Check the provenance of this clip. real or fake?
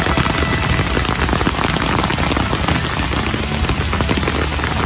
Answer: real